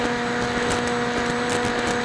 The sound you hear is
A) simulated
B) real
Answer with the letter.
B